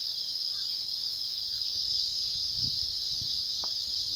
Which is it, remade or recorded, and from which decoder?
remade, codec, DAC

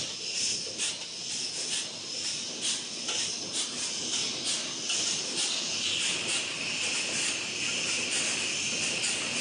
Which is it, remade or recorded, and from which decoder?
recorded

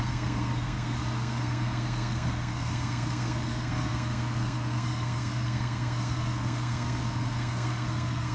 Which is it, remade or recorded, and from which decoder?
remade, codec, SNAC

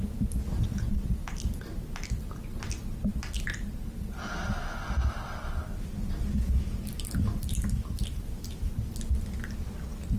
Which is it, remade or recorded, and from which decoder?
recorded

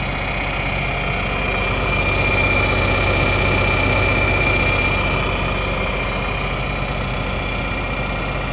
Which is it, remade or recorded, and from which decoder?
recorded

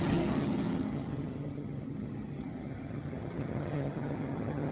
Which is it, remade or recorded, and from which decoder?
remade, vocoder, HiFi-GAN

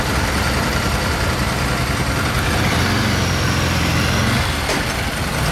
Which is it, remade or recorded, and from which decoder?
recorded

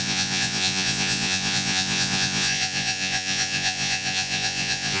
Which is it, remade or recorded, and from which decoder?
remade, vocoder, Vocos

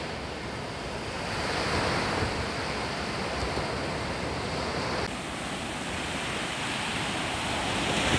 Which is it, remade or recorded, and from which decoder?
recorded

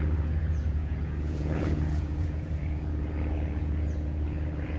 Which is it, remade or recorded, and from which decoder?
remade, vocoder, Vocos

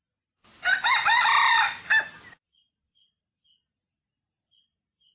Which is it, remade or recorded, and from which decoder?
recorded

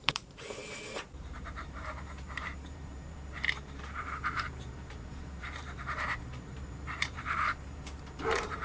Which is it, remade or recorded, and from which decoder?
remade, vocoder, BigVGAN v2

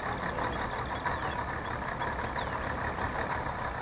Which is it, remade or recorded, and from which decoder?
recorded